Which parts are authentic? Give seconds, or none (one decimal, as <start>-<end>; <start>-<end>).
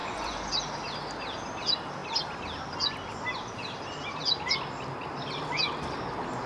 0.5-6.5